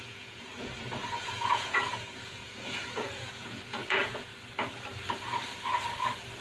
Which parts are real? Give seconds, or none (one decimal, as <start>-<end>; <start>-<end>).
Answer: 4.3-6.4